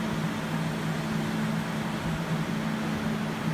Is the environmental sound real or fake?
real